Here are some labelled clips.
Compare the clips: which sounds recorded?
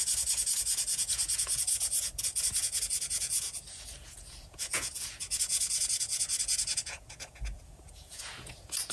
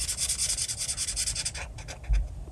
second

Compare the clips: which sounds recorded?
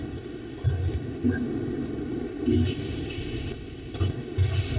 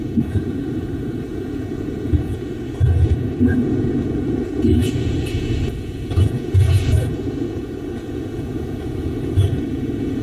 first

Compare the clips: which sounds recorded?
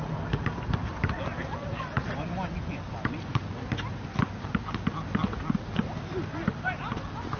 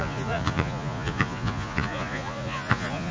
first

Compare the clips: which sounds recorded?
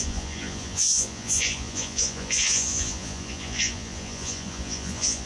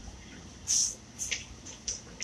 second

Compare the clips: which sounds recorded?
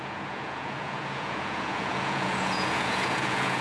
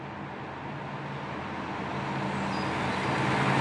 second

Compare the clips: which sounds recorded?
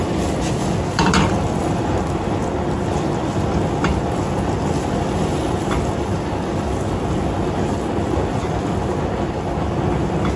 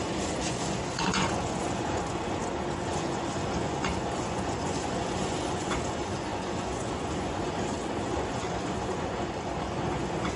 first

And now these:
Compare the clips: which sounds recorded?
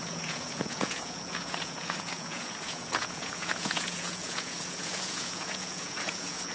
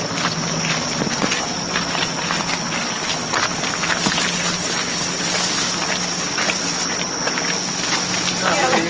second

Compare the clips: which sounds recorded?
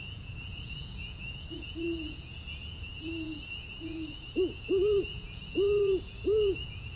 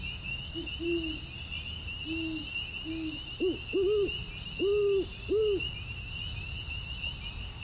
second